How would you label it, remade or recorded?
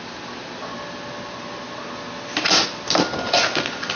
recorded